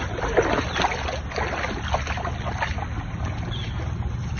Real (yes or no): yes